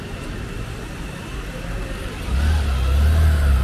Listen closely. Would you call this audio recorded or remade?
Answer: recorded